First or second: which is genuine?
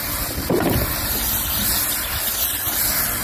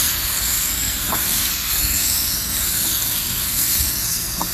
first